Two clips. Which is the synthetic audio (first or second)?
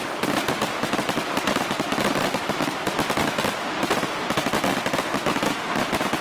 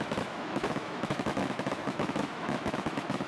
second